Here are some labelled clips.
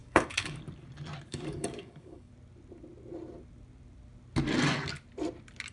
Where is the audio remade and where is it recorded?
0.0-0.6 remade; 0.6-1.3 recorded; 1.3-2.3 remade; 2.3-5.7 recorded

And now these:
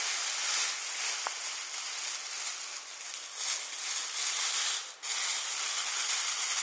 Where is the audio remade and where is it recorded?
0.0-6.6 recorded

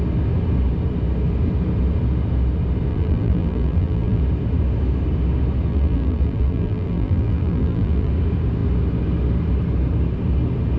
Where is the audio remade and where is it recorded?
0.0-2.9 recorded; 2.9-4.2 remade; 4.2-5.7 recorded; 5.7-8.1 remade; 8.1-10.8 recorded

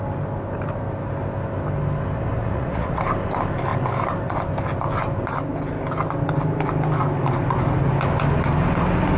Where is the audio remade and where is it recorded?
0.0-2.4 recorded; 2.4-3.0 remade; 3.0-9.2 recorded

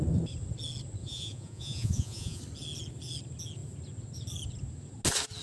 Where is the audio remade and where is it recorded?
0.0-1.0 recorded; 1.0-2.4 remade; 2.4-5.4 recorded

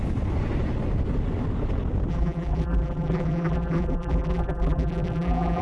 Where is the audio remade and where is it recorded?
0.0-2.1 recorded; 2.1-5.6 remade